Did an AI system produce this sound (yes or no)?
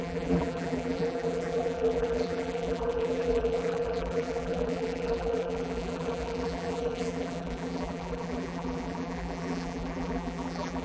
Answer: yes